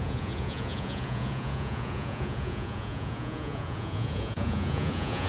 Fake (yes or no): yes